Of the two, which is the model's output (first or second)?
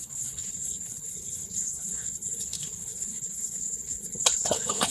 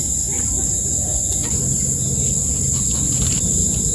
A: first